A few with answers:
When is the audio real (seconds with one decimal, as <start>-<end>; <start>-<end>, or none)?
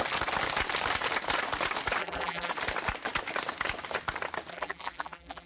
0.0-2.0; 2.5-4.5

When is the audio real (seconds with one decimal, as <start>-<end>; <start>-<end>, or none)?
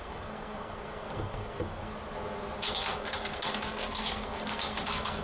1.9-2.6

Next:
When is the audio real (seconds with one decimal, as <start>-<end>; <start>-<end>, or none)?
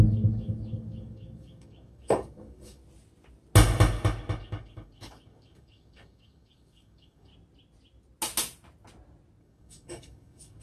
2.8-4.4; 7.3-9.4